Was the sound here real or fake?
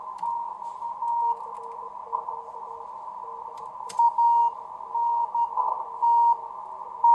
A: real